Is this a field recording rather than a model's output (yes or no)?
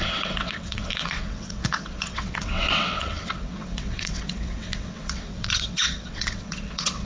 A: no